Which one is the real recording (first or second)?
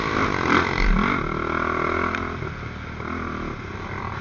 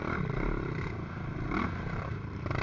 first